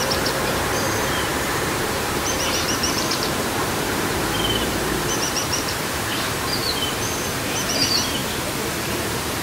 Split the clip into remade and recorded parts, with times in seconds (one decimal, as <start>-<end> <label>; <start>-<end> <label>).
0.0-6.6 remade; 6.6-7.1 recorded; 7.1-8.2 remade; 8.2-8.7 recorded; 8.7-9.4 remade